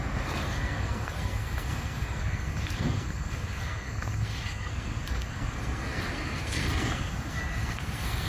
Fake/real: fake